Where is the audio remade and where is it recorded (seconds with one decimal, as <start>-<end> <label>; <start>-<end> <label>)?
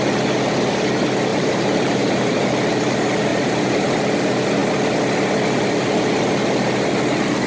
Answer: 0.0-1.3 recorded; 1.3-2.4 remade; 2.4-3.3 recorded; 3.3-3.9 remade; 3.9-7.5 recorded